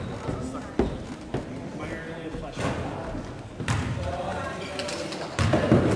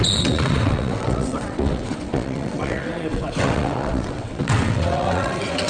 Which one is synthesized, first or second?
second